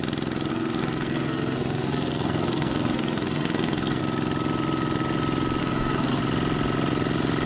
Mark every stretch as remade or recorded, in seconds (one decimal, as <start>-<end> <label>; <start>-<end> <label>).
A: 0.0-0.5 recorded; 0.5-4.0 remade; 4.0-5.6 recorded; 5.6-6.2 remade; 6.2-7.5 recorded